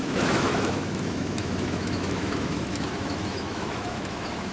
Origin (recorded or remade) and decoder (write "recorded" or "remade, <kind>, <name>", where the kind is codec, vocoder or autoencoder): remade, autoencoder, DAC-VAE